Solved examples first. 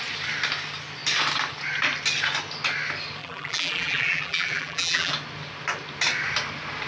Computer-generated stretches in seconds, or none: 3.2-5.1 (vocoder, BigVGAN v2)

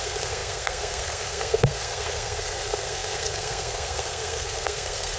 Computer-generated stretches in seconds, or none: 0.0-5.2 (codec, SNAC)

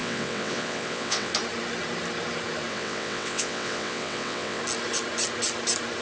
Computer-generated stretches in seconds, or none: 0.0-1.3 (vocoder, WaveNeXt); 2.7-4.6

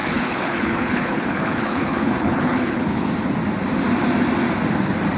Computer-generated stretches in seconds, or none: 0.0-3.1 (codec, HILCodec)

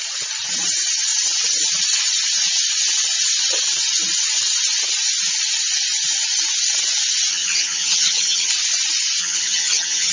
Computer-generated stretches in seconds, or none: 7.3-8.5 (vocoder, HiFi-GAN); 9.2-10.1

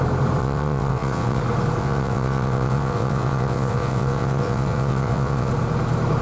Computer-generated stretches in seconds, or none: 0.4-1.4 (vocoder, WaveNeXt); 1.8-5.5

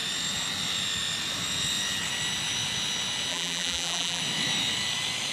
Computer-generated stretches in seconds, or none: 3.3-4.2 (vocoder, BigVGAN v2)